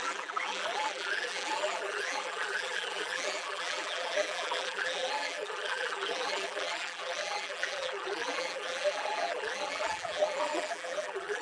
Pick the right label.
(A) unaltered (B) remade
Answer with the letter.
B